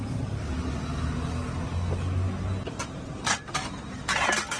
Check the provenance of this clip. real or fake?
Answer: real